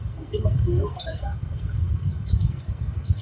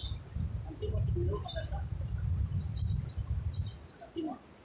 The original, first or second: second